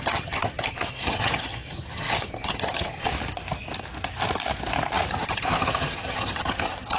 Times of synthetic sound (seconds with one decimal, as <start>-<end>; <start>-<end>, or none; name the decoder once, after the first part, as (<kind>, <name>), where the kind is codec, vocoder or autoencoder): 0.0-3.1 (vocoder, HiFi-GAN); 5.1-7.0